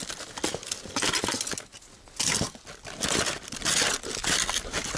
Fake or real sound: real